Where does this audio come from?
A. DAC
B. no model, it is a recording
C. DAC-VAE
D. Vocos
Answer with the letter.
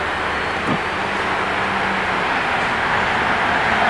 B